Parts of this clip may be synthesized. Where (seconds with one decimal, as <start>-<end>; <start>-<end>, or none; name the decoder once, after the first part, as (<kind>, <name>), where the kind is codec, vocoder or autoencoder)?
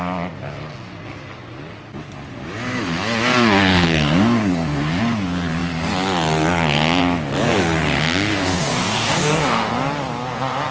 3.7-5.0 (codec, DAC); 8.3-9.7